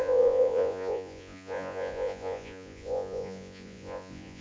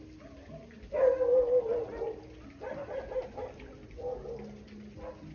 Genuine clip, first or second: second